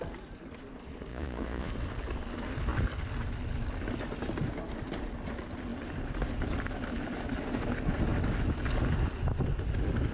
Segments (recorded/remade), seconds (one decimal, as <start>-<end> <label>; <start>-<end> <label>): 0.0-1.1 recorded; 1.1-1.7 remade; 1.7-10.1 recorded